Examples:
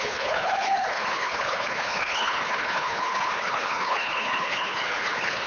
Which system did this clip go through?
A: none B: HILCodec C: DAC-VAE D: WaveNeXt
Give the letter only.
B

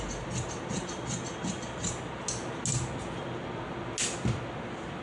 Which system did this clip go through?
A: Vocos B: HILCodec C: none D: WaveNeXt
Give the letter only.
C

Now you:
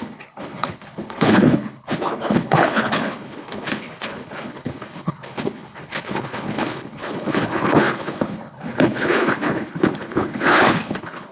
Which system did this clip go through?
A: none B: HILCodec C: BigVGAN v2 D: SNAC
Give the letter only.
B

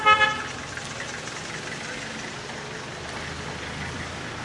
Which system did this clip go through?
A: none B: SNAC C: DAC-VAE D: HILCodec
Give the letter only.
A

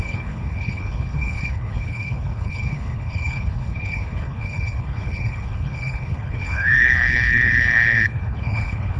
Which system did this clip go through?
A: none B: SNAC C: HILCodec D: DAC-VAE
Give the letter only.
C